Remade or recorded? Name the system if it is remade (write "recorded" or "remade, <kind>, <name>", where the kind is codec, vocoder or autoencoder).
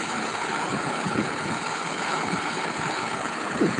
remade, codec, HILCodec